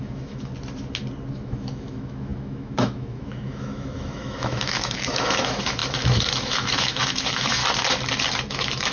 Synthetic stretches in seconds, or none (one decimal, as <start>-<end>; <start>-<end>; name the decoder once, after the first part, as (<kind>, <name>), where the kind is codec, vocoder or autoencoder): 0.0-0.5 (autoencoder, DAC-VAE); 1.3-7.6; 8.5-8.9